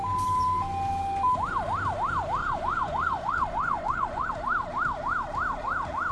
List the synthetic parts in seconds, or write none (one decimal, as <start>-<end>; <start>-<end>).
2.4-4.3